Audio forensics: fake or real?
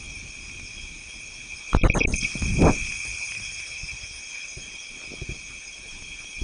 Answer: real